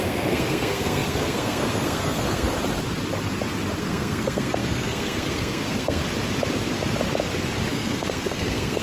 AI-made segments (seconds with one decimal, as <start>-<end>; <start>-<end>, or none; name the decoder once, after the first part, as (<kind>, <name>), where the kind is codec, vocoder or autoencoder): 0.0-2.5 (codec, SNAC); 3.8-6.0; 7.7-8.8